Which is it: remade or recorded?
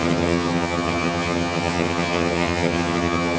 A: remade